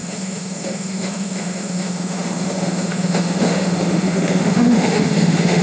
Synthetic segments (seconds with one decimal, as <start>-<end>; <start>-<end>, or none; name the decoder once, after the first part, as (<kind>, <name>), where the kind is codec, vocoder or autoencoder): 0.0-5.6 (autoencoder, DAC-VAE)